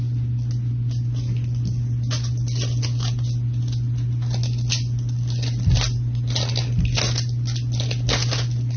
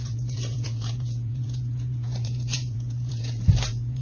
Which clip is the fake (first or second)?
second